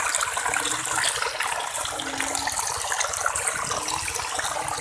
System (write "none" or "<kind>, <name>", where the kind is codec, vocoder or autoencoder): none